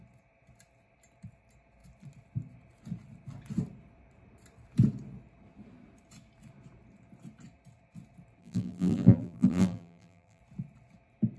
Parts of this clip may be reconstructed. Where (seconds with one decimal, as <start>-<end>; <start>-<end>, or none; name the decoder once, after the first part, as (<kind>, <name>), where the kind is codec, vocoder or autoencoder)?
8.4-10.4 (vocoder, BigVGAN v2)